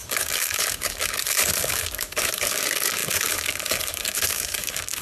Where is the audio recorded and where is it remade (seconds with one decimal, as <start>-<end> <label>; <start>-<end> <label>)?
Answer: 0.0-5.0 remade